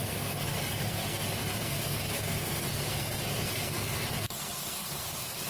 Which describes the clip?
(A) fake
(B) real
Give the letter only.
A